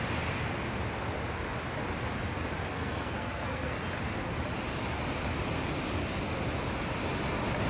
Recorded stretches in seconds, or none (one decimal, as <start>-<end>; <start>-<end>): 0.0-2.7; 3.8-7.7